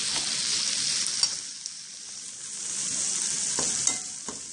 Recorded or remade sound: recorded